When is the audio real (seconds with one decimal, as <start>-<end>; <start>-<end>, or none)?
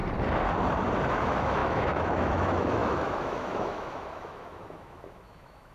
0.0-1.1